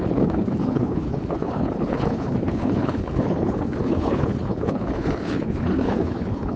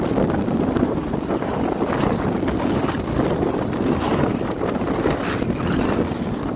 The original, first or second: second